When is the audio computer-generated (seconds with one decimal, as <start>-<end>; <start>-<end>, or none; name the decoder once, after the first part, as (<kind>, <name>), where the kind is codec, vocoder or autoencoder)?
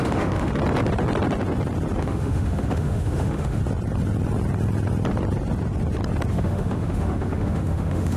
0.0-0.5 (autoencoder, DAC-VAE); 2.0-3.6; 6.3-8.2